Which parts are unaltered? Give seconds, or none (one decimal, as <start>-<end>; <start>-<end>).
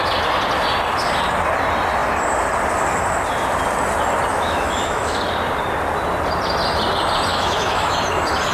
0.0-4.3; 5.2-7.3; 8.0-8.5